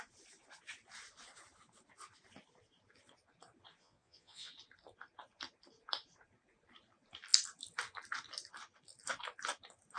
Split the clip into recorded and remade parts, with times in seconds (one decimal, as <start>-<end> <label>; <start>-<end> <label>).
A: 0.0-3.8 recorded; 3.8-4.5 remade; 4.5-10.0 recorded